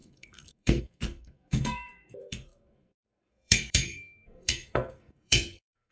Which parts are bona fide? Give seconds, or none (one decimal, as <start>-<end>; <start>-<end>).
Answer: none